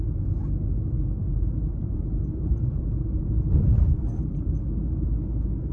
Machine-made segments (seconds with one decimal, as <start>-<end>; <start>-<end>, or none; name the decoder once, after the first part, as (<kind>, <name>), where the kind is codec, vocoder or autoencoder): 1.2-4.6 (vocoder, BigVGAN v2)